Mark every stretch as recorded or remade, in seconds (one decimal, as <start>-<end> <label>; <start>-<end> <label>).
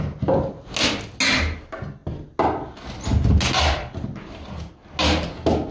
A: 0.0-5.7 recorded